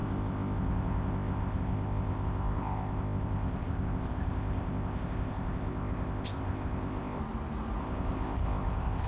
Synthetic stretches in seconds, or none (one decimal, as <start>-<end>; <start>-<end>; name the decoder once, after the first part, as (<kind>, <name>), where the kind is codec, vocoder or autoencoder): 0.0-7.2 (codec, ZipCodec); 7.8-9.1